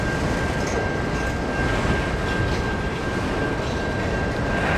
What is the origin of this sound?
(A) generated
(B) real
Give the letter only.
B